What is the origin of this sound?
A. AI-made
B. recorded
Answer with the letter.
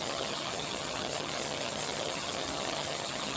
A